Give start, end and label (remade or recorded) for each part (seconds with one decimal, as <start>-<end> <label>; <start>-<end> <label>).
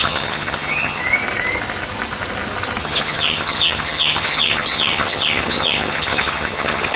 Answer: 0.0-1.0 remade; 1.0-2.8 recorded; 2.8-7.0 remade